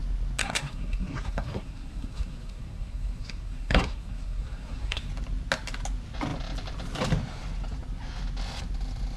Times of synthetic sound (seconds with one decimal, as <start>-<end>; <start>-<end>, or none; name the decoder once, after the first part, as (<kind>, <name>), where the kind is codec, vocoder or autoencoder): 0.4-5.1 (codec, SNAC)